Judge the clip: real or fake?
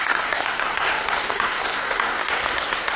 fake